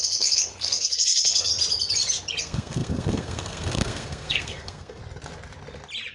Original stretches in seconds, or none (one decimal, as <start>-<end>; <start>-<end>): 1.5-2.4; 5.0-6.1